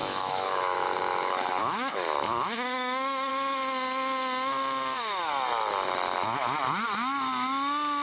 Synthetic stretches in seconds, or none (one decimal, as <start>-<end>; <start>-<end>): 0.0-3.3